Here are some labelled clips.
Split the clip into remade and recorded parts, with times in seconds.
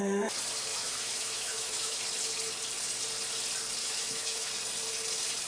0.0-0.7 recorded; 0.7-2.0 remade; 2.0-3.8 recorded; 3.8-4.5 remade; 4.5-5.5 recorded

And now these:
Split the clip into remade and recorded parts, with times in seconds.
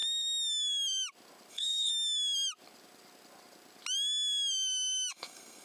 0.0-1.5 recorded; 1.5-1.9 remade; 1.9-5.1 recorded; 5.1-5.6 remade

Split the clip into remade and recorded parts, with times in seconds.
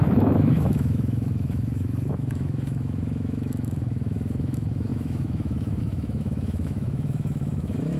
0.0-8.0 remade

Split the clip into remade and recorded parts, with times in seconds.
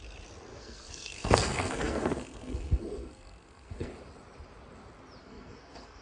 0.0-0.5 recorded; 0.5-3.9 remade; 3.9-5.2 recorded; 5.2-6.0 remade